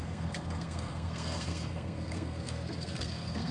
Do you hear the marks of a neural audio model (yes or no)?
yes